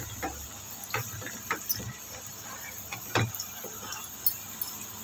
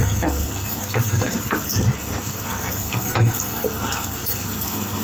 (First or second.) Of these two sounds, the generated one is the second